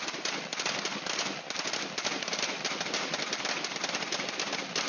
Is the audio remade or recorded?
recorded